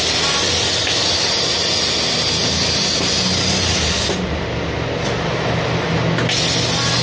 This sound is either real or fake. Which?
real